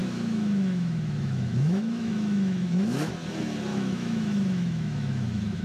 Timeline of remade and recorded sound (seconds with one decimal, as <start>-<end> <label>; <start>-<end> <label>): 0.0-3.1 remade; 3.1-3.7 recorded; 3.7-5.6 remade